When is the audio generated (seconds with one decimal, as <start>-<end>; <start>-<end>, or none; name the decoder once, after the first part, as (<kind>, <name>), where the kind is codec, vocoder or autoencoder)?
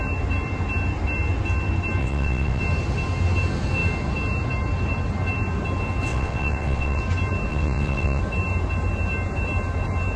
2.0-2.6 (vocoder, WaveNeXt); 6.1-7.0; 7.5-8.2